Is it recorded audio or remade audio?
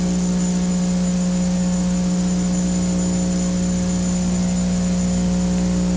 recorded